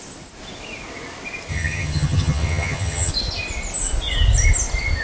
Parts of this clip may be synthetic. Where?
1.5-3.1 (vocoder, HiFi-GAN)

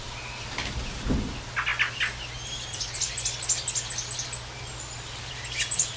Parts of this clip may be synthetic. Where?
none

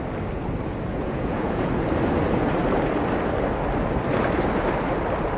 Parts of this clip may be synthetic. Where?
0.9-1.7 (vocoder, Vocos)

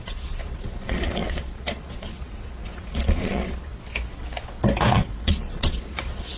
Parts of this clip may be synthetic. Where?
0.0-3.7 (vocoder, Vocos); 4.9-6.4

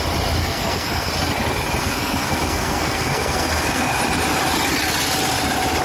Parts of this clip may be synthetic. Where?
0.4-1.1 (codec, SNAC); 1.8-4.0

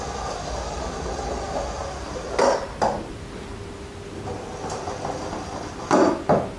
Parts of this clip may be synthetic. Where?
1.8-3.9 (vocoder, BigVGAN v2)

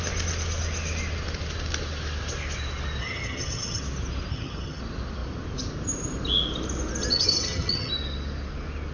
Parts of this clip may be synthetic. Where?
3.0-3.8 (vocoder, HiFi-GAN); 4.3-4.8; 7.0-7.9